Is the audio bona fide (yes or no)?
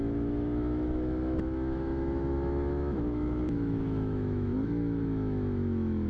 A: no